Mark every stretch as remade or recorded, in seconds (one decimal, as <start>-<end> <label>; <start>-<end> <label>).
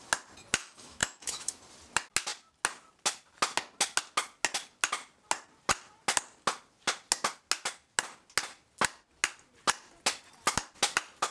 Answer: 0.0-0.6 recorded; 0.6-1.6 remade; 1.6-11.3 recorded